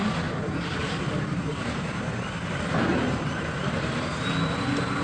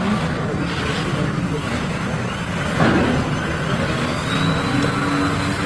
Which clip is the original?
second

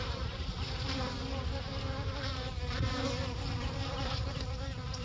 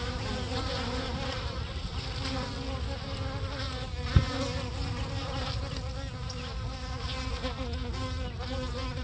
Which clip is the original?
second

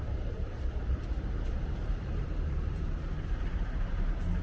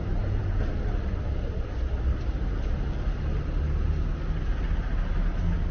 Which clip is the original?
second